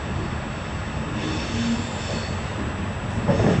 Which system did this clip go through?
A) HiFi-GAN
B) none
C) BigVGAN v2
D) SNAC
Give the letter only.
B